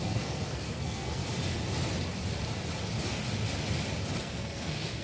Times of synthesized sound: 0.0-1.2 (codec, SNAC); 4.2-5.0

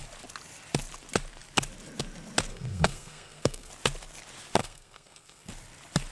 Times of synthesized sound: 2.5-3.7 (codec, SNAC); 4.6-5.5